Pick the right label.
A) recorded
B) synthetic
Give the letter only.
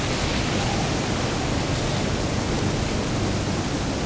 A